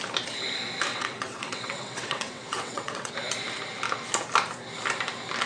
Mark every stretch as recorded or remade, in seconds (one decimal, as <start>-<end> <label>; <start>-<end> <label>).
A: 0.0-0.9 recorded; 0.9-3.1 remade; 3.1-5.5 recorded